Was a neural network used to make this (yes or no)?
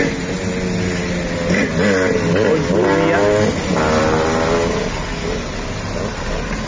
no